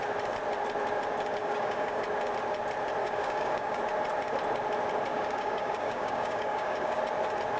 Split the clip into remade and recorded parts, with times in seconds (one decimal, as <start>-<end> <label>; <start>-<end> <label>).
0.0-1.4 recorded; 1.4-2.0 remade; 2.0-3.0 recorded; 3.0-3.8 remade; 3.8-5.1 recorded; 5.1-7.0 remade; 7.0-7.6 recorded